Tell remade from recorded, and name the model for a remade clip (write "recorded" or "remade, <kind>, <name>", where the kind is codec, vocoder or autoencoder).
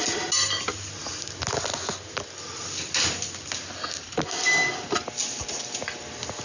recorded